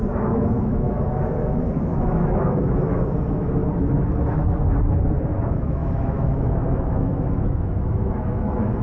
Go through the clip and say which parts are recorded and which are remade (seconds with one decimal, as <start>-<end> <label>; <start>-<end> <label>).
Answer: 0.0-3.6 remade; 3.6-5.4 recorded; 5.4-8.8 remade